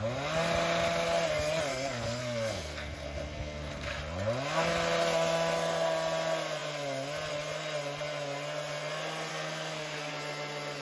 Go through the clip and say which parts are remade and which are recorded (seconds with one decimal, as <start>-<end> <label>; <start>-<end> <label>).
0.0-1.7 recorded; 1.7-4.0 remade; 4.0-9.3 recorded; 9.3-10.1 remade; 10.1-10.8 recorded